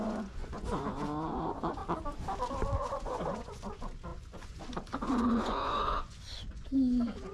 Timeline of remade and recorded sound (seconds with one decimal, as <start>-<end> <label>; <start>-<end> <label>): 0.0-1.8 remade; 1.8-2.7 recorded; 2.7-7.3 remade